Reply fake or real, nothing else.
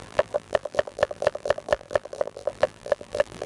fake